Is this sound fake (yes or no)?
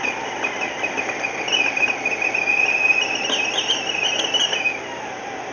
no